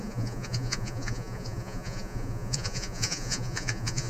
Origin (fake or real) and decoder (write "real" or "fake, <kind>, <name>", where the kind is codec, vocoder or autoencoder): fake, vocoder, Vocos